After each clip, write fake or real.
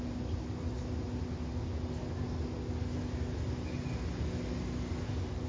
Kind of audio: real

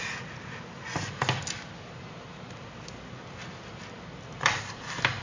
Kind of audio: real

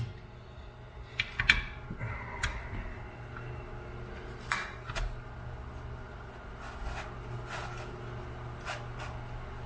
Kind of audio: real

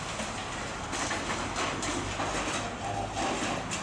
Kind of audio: real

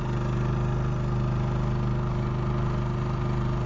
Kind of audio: real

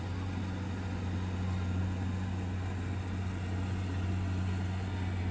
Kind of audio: real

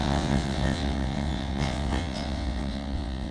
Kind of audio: fake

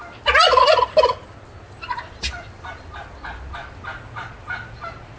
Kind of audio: real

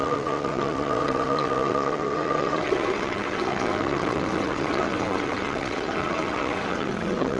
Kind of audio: fake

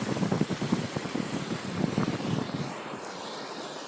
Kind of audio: real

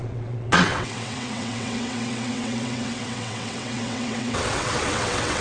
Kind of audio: fake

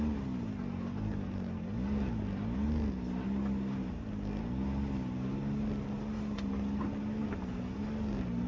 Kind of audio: real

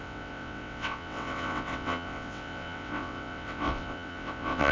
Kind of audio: fake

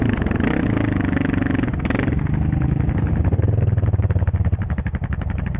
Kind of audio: real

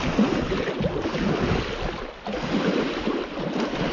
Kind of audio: real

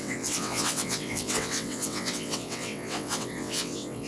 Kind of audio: fake